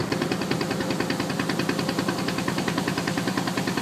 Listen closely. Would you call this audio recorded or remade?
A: recorded